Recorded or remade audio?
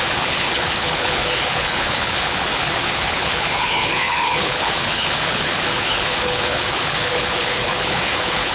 remade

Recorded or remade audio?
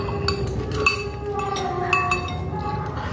recorded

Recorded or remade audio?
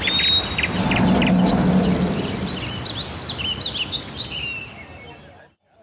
recorded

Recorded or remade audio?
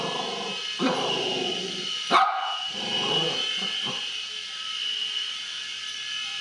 remade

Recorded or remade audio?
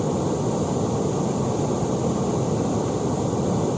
recorded